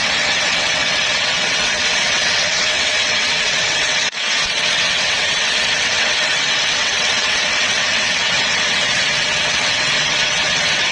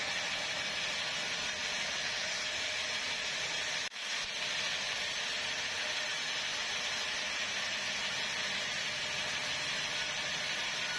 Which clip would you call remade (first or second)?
first